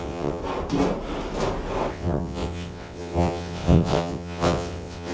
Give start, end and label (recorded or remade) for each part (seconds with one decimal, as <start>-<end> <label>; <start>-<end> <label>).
0.0-0.4 remade; 0.4-1.9 recorded; 1.9-5.1 remade